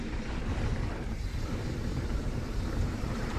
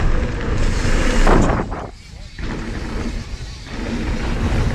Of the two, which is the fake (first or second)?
first